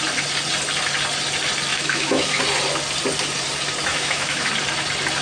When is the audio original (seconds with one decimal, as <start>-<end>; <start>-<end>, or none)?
0.0-1.7; 2.4-3.9; 4.5-5.2